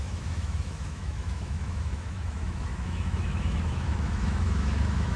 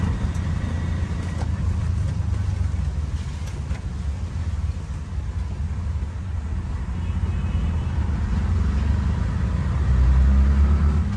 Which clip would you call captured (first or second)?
second